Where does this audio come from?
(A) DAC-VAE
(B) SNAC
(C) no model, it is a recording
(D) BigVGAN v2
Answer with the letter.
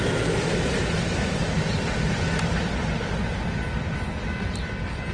C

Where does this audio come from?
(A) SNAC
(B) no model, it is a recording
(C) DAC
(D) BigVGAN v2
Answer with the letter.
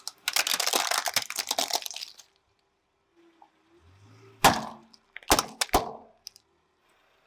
B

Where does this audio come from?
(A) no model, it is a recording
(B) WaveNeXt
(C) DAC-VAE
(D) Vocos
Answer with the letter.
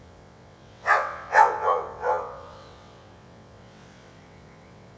B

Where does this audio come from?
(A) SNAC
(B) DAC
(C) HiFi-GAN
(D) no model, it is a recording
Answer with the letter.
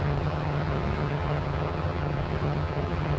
C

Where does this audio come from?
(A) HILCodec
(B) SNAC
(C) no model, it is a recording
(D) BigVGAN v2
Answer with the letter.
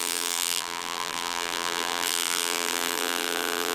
D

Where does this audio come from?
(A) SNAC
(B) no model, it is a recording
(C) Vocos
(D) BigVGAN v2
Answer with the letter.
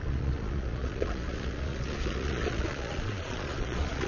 C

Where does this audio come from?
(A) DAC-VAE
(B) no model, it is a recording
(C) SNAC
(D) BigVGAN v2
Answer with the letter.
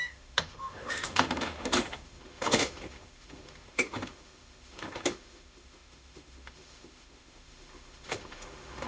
A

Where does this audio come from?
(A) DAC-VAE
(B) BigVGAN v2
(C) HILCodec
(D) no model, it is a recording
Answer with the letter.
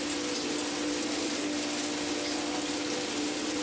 D